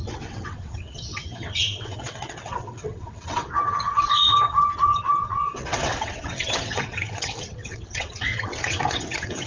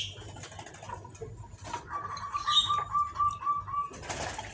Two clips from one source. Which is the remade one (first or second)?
first